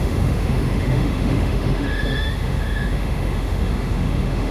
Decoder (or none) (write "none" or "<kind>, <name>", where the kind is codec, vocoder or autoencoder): autoencoder, DAC-VAE